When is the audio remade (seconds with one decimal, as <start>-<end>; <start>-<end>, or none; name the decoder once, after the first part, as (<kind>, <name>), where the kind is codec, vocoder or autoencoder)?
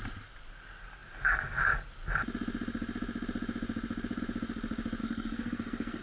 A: 5.0-6.0 (codec, SNAC)